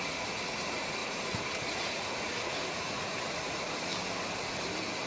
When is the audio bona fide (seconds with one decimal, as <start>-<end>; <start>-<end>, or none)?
3.9-5.1